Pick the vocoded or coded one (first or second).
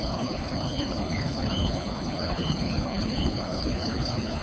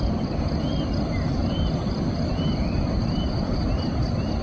first